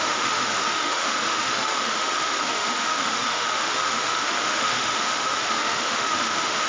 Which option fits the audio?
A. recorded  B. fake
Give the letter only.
B